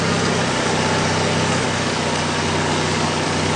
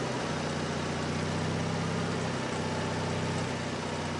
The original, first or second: second